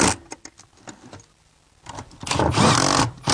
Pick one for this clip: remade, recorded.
recorded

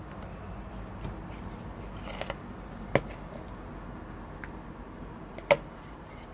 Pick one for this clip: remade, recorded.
recorded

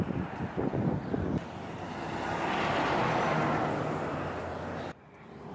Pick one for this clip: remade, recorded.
recorded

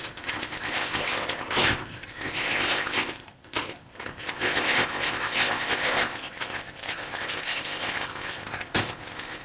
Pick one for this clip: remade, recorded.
remade